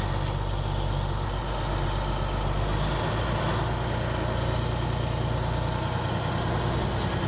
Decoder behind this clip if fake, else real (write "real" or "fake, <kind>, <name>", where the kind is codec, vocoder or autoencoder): real